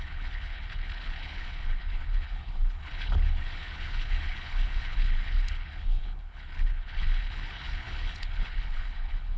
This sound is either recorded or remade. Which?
remade